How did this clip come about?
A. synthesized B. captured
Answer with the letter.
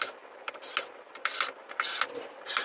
B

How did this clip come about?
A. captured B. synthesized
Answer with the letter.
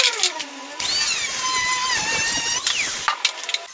A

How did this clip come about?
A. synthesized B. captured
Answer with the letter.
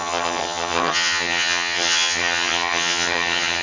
A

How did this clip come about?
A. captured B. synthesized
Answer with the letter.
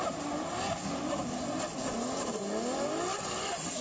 A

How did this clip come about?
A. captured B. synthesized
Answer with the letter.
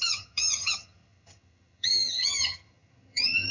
B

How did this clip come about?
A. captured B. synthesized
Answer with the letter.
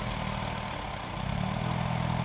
A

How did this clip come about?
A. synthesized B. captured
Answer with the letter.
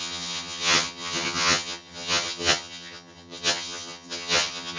A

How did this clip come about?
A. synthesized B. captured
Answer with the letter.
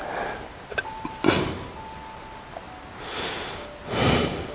B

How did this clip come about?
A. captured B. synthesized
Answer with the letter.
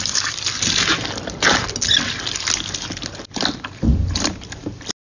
A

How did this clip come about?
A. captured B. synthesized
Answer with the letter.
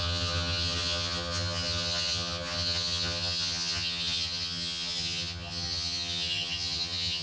B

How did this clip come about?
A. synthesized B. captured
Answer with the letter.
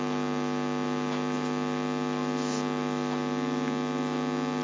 B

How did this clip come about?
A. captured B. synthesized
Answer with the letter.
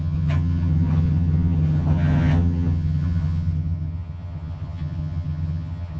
B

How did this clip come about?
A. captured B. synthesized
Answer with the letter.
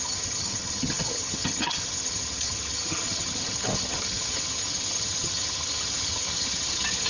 B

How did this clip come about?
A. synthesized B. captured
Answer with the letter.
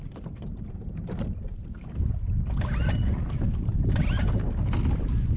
B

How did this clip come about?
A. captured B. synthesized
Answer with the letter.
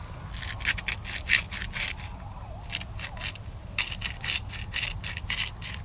A